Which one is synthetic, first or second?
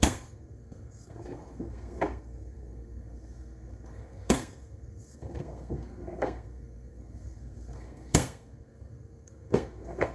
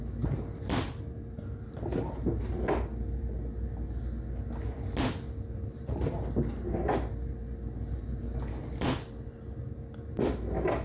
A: first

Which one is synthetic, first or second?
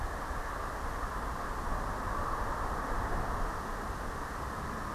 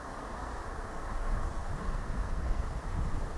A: second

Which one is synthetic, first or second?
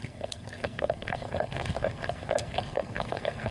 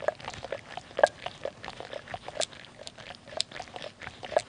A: first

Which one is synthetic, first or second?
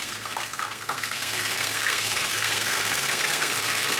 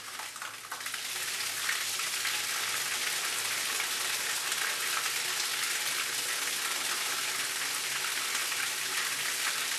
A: first